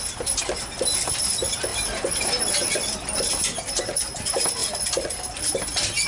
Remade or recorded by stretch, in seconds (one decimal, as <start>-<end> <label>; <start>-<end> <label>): 0.0-6.1 recorded